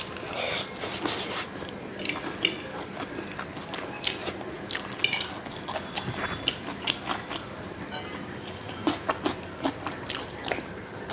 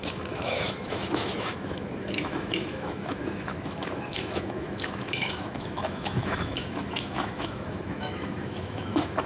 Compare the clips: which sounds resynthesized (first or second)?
second